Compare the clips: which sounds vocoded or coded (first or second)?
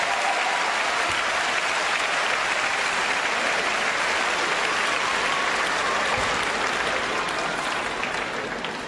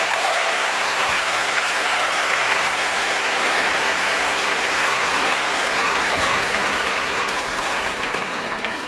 second